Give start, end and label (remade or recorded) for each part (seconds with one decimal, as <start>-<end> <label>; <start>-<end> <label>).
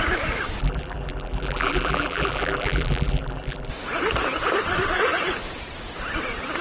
0.0-0.6 recorded; 0.6-3.7 remade; 3.7-6.6 recorded